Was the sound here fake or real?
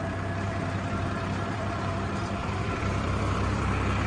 fake